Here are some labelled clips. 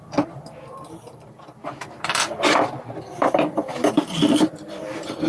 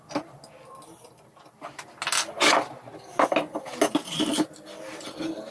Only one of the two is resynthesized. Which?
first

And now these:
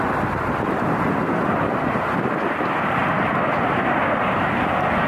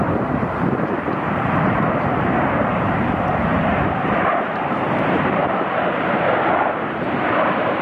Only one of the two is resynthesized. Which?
second